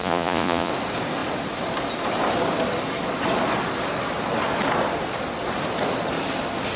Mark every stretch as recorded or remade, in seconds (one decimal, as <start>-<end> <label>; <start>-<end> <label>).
0.0-0.7 remade; 0.7-6.8 recorded